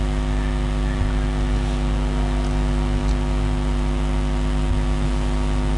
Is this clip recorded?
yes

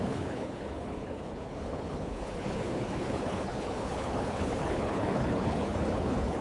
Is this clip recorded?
no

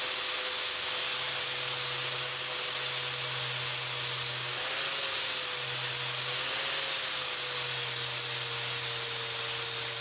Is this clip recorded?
yes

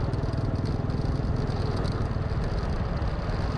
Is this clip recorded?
yes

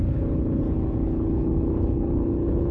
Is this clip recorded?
no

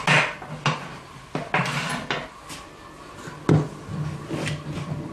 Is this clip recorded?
yes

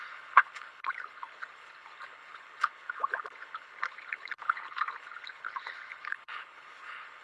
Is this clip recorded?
no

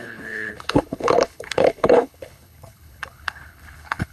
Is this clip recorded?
no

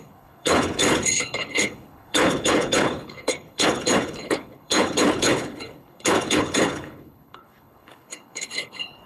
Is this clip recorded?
no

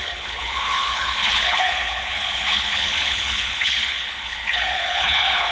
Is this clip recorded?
no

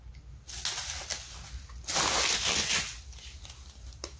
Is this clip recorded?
yes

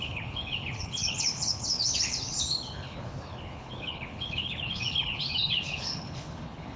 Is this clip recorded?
no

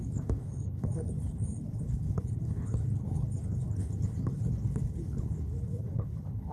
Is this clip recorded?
no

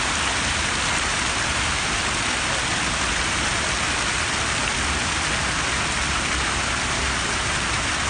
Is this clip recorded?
yes